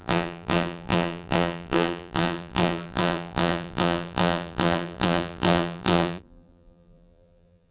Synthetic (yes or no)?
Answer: yes